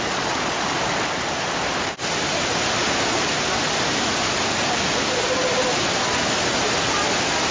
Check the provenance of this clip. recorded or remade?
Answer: recorded